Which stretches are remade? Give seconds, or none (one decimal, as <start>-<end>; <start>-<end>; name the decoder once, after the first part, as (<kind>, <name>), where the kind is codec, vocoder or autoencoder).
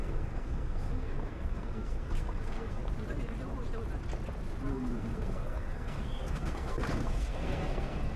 0.0-2.8 (codec, SNAC); 4.7-8.2